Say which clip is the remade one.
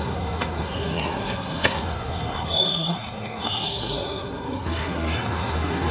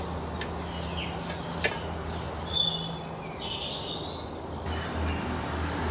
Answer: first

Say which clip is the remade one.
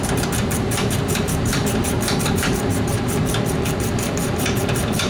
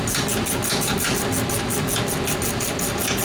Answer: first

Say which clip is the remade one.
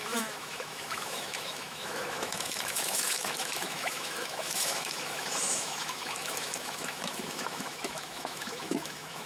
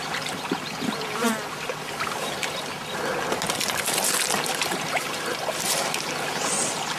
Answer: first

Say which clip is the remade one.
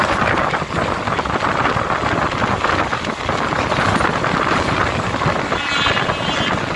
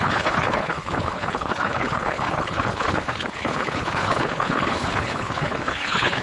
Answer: second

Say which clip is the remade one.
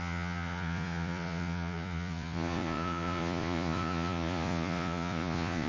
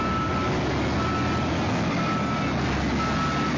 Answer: first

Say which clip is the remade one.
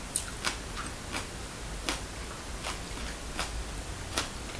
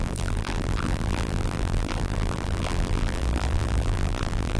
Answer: second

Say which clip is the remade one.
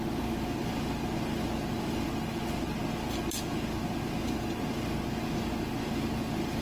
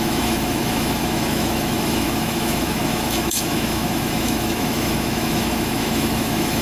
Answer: second